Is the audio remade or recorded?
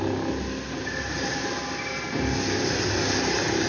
recorded